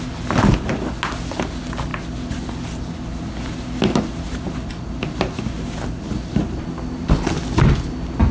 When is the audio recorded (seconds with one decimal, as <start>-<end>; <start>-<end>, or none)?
0.0-8.3